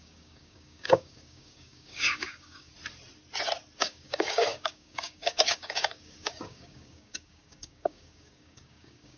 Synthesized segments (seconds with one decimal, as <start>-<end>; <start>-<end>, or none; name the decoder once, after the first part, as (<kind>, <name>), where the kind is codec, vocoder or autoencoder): 0.0-2.7 (codec, DAC); 3.8-9.2